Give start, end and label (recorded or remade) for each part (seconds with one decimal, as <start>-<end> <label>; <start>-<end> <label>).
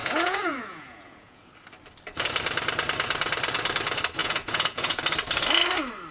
0.0-1.5 remade; 1.5-4.2 recorded; 4.2-5.0 remade; 5.0-6.1 recorded